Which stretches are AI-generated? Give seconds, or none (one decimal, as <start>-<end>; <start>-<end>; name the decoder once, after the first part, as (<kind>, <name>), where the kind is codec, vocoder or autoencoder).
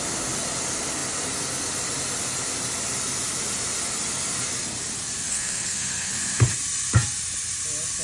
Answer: 5.3-6.1 (codec, SNAC)